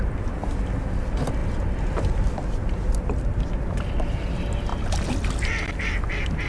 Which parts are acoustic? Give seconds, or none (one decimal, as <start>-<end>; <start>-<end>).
0.0-6.5